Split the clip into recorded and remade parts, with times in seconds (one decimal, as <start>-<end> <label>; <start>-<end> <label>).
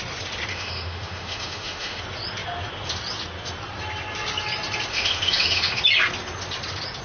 0.0-0.5 recorded; 0.5-2.0 remade; 2.0-4.9 recorded; 4.9-5.8 remade; 5.8-7.0 recorded